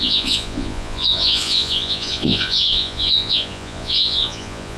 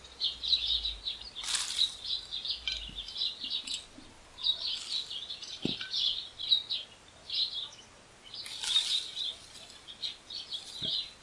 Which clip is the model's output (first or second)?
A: first